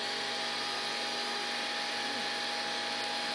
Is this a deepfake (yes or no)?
no